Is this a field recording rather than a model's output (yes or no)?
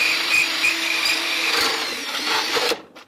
no